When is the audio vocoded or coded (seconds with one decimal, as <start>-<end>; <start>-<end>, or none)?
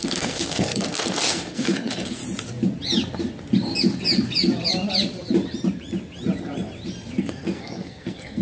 0.0-2.2; 7.2-8.4